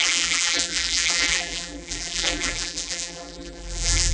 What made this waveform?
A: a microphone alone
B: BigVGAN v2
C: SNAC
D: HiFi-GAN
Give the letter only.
B